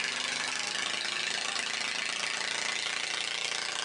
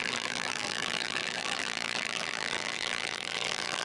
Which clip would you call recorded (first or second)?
first